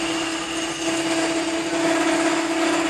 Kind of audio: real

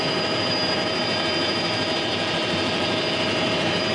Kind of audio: fake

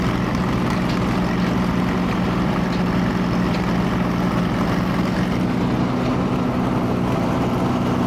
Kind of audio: real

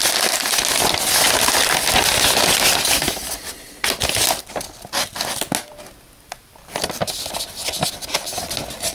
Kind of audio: real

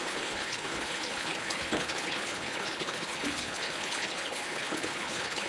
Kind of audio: fake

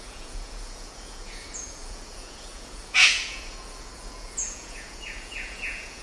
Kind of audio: fake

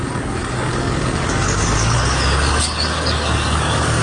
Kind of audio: fake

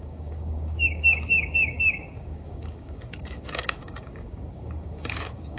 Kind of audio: fake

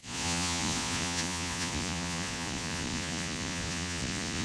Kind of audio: fake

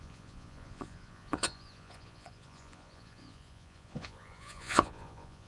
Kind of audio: fake